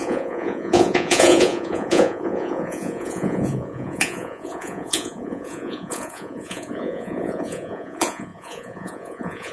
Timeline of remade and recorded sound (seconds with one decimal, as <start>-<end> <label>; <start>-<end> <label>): 0.0-9.5 remade